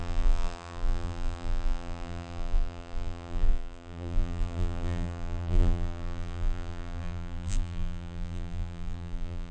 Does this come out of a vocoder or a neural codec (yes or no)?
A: yes